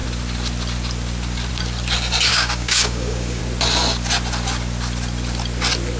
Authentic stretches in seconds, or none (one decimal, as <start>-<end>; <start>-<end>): 0.0-2.3; 3.4-6.0